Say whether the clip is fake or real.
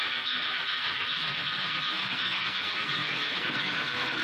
fake